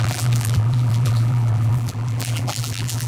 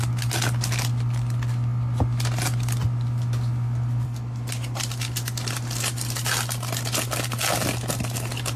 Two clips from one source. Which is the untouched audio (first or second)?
second